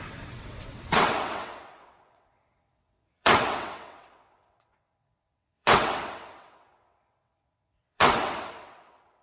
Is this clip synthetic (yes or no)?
yes